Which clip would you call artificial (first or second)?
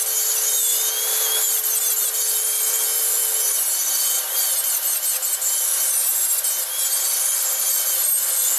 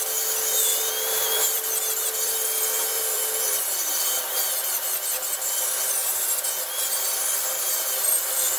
second